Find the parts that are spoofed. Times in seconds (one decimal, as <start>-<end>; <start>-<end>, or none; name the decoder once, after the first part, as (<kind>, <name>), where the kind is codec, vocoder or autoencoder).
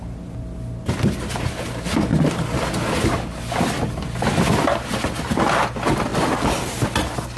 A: none